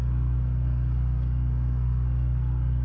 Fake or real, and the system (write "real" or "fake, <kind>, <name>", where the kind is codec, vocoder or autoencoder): fake, codec, SNAC